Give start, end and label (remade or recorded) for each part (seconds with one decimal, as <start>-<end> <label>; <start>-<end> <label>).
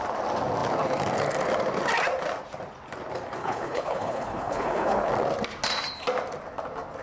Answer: 0.0-3.4 recorded; 3.4-5.1 remade; 5.1-7.0 recorded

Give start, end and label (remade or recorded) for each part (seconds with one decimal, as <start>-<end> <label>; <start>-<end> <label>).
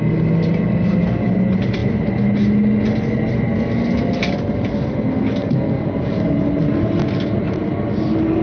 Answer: 0.0-8.4 recorded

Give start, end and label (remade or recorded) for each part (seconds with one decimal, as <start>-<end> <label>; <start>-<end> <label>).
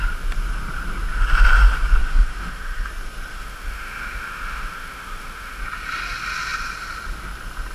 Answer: 0.0-2.0 recorded; 2.0-2.9 remade; 2.9-3.3 recorded; 3.3-5.6 remade; 5.6-7.7 recorded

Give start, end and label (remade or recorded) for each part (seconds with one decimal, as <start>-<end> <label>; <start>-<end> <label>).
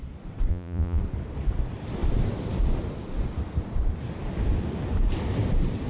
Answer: 0.0-0.5 recorded; 0.5-1.0 remade; 1.0-5.9 recorded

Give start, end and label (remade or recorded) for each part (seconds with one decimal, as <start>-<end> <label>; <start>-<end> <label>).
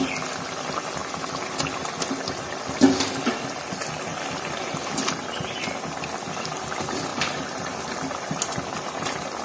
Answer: 0.0-4.1 recorded; 4.1-5.4 remade; 5.4-7.1 recorded; 7.1-7.9 remade; 7.9-9.4 recorded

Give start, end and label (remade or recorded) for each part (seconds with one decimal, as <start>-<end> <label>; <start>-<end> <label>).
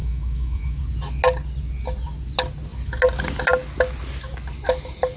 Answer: 0.0-0.8 remade; 0.8-5.2 recorded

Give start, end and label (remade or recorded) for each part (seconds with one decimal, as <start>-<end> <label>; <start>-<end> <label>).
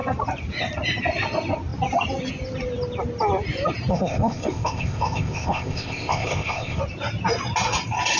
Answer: 0.0-3.9 recorded; 3.9-6.8 remade; 6.8-8.2 recorded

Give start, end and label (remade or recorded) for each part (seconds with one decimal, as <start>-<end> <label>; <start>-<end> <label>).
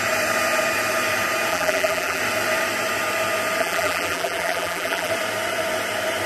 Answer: 0.0-1.5 recorded; 1.5-2.2 remade; 2.2-3.6 recorded; 3.6-5.1 remade; 5.1-6.3 recorded